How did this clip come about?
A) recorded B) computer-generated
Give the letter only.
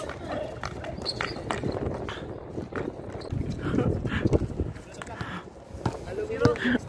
A